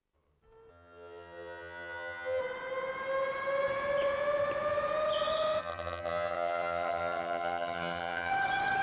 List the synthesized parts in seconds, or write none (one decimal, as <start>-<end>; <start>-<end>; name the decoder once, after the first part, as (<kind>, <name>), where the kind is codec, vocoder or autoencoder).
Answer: 0.7-2.4 (vocoder, HiFi-GAN); 5.6-8.3